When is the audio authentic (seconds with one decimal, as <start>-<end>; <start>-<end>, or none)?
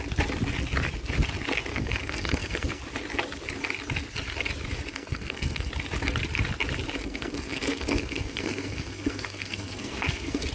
0.0-1.7; 2.8-4.9; 5.7-7.0